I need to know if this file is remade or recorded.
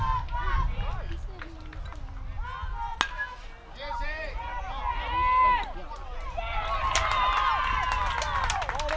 recorded